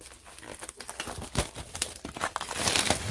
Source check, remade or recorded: recorded